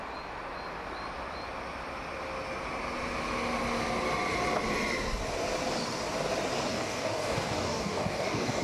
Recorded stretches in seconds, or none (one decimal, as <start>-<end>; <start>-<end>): 0.0-6.7